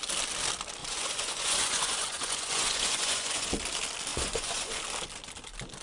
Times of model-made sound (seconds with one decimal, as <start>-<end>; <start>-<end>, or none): 0.8-3.5; 4.1-4.8